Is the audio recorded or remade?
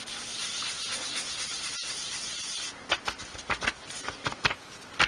recorded